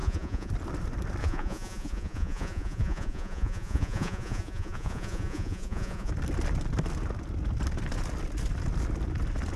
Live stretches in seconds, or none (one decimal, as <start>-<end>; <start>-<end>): 0.5-1.2; 6.1-9.6